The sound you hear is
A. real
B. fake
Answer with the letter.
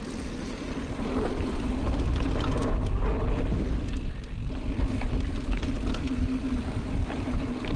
A